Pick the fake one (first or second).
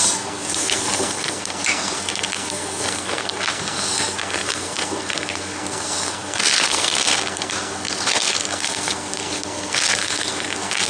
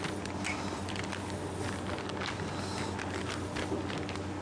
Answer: first